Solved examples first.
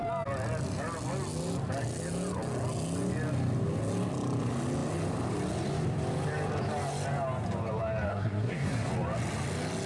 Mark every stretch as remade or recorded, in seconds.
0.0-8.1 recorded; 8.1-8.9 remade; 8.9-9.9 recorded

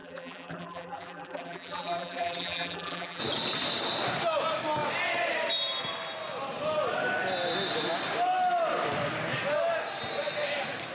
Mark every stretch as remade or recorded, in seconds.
0.0-3.2 remade; 3.2-10.9 recorded

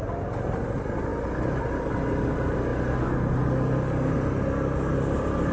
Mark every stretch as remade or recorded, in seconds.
0.0-5.5 recorded

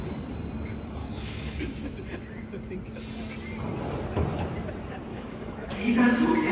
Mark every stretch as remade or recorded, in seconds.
0.0-1.0 recorded; 1.0-1.6 remade; 1.6-5.1 recorded; 5.1-6.1 remade; 6.1-6.5 recorded

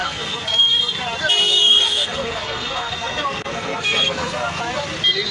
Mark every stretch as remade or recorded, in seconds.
0.0-0.8 remade; 0.8-1.4 recorded; 1.4-4.6 remade; 4.6-5.3 recorded